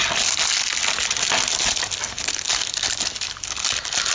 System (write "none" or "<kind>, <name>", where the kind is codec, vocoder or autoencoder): none